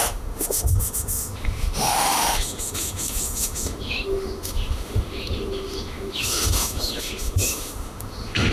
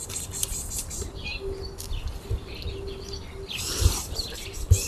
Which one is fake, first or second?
first